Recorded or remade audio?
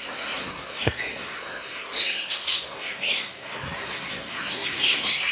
remade